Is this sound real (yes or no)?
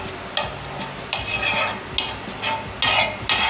yes